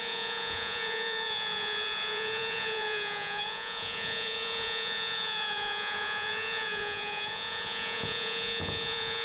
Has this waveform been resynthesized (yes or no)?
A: yes